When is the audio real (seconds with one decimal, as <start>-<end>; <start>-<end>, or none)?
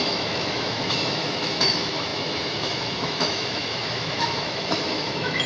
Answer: none